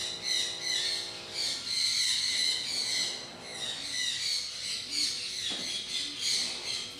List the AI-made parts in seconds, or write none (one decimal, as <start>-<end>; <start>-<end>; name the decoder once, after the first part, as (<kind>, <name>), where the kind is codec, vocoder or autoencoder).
none